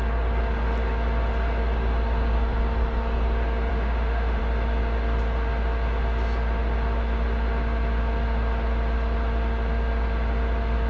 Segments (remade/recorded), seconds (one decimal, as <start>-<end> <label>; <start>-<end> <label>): 0.0-3.7 recorded; 3.7-4.4 remade; 4.4-10.9 recorded

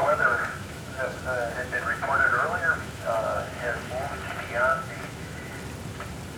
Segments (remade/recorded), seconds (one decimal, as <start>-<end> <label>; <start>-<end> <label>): 0.0-3.8 remade; 3.8-4.7 recorded; 4.7-5.5 remade; 5.5-6.4 recorded

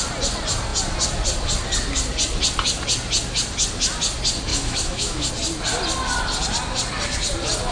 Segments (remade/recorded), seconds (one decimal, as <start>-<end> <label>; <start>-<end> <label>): 0.0-4.5 recorded; 4.5-5.3 remade; 5.3-7.7 recorded

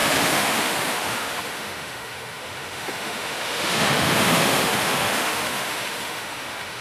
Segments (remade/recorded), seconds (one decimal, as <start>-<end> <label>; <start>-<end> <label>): 0.0-6.8 remade

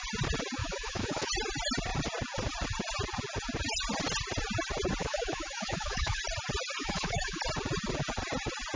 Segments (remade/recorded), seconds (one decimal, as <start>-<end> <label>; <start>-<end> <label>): 0.0-0.6 recorded; 0.6-1.3 remade; 1.3-5.0 recorded; 5.0-6.2 remade; 6.2-6.8 recorded; 6.8-7.4 remade; 7.4-8.8 recorded